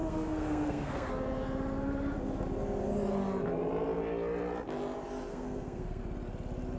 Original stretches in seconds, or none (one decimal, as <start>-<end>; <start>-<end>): 1.1-5.3; 6.0-6.8